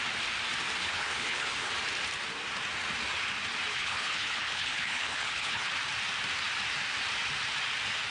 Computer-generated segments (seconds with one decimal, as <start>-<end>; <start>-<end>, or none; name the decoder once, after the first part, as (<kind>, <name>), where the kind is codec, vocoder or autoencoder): 0.8-1.7 (codec, HILCodec); 3.7-5.7